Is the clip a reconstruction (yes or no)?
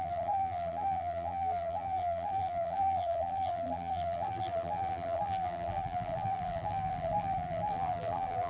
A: yes